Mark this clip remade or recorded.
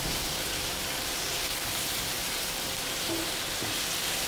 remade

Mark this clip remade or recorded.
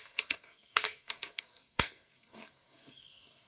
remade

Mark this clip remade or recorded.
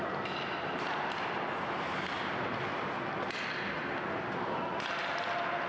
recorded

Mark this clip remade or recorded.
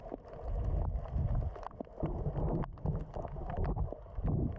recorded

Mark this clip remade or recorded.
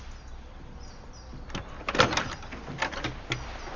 recorded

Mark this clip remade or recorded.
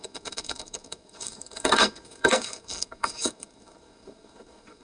remade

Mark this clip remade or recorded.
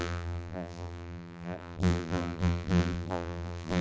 remade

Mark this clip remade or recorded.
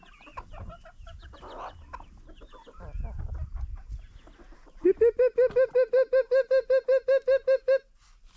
recorded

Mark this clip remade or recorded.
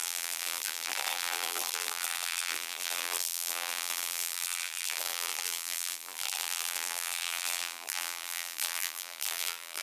remade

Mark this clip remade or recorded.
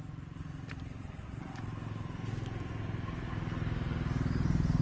recorded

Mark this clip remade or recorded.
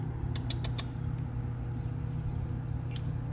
recorded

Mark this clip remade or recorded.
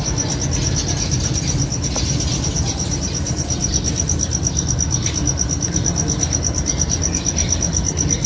recorded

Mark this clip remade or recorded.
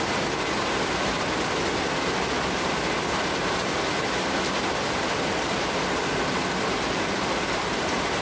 recorded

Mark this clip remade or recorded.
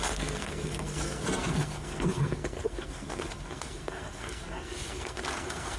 remade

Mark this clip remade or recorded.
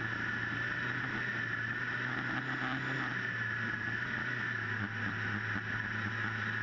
recorded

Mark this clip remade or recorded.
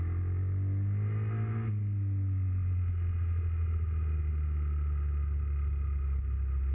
recorded